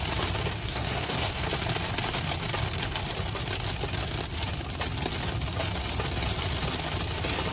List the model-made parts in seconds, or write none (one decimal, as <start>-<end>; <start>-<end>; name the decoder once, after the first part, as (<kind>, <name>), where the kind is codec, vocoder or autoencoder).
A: 0.6-1.3 (codec, SNAC)

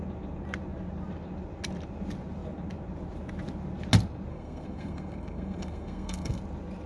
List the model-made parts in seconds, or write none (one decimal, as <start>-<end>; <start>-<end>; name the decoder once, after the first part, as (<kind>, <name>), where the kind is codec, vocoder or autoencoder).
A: 4.3-6.4 (codec, SNAC)

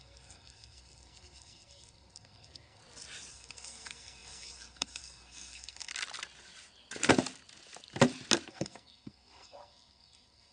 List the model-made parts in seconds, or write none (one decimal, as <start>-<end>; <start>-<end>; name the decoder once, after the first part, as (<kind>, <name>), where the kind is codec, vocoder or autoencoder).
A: 0.0-2.8 (codec, SNAC); 3.3-5.9; 8.5-10.5